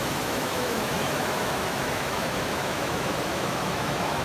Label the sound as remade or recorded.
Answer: remade